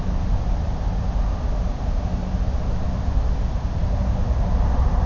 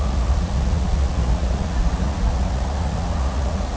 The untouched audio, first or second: first